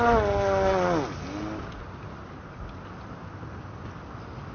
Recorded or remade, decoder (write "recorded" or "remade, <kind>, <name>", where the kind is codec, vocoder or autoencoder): recorded